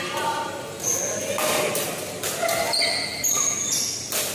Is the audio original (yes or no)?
yes